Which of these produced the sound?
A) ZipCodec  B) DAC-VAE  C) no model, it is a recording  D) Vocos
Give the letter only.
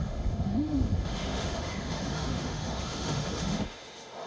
B